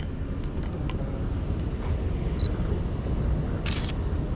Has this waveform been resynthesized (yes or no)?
no